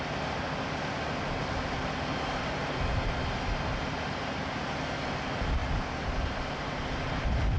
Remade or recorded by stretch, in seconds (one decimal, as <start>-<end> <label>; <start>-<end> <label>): 0.0-7.6 recorded